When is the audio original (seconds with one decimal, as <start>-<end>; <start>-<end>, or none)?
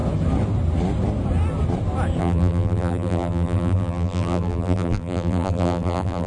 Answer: 0.0-2.2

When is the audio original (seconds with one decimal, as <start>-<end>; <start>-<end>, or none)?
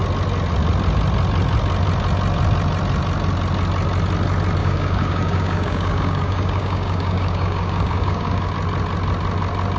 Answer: 0.0-4.6; 8.5-9.8